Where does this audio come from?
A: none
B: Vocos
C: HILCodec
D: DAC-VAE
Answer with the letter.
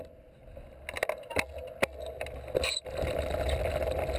A